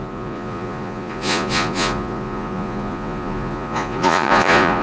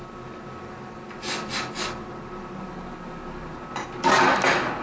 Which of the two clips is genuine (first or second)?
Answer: second